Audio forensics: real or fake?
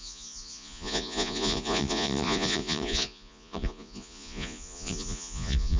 fake